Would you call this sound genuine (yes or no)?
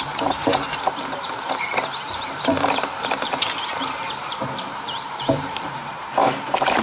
no